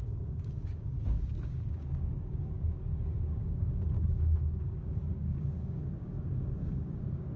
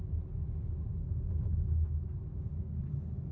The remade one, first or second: first